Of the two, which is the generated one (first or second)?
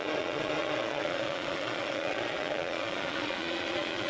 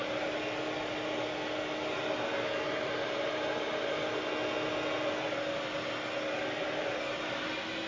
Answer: first